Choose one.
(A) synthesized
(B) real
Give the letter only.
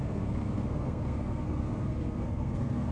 A